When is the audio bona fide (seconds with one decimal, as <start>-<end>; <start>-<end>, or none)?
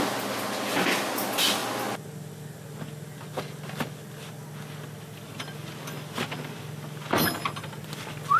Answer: 0.0-8.4